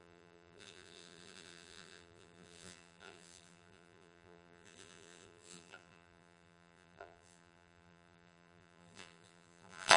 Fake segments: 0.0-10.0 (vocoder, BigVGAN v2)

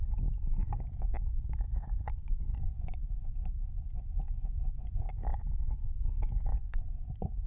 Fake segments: 0.6-4.0 (vocoder, BigVGAN v2); 5.3-5.8; 6.5-7.5

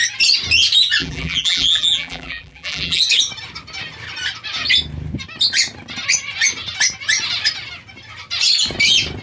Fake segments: 1.0-3.0 (vocoder, BigVGAN v2)

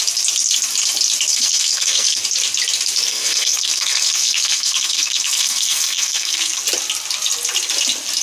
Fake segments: 1.3-2.2 (codec, SNAC); 3.1-6.6

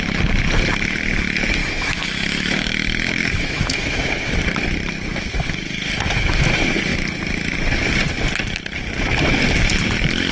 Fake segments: 1.6-4.1 (autoencoder, DAC-VAE)

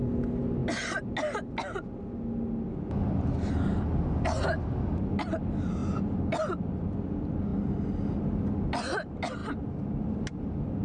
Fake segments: none

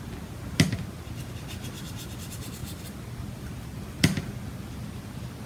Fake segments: none

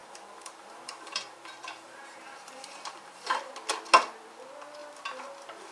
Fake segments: 0.0-3.4 (vocoder, BigVGAN v2)